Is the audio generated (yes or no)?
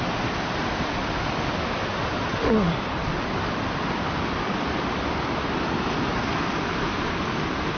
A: yes